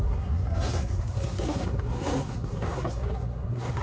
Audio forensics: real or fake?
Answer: fake